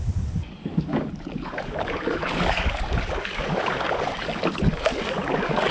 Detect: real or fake fake